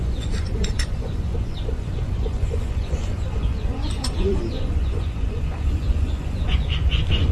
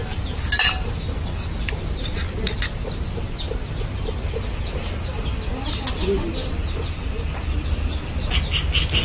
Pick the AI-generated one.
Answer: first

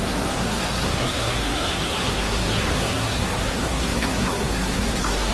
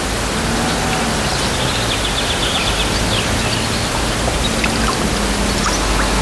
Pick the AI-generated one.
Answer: first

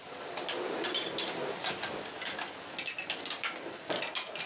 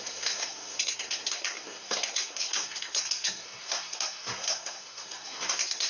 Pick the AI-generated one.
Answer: second